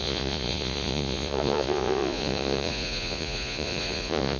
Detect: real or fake fake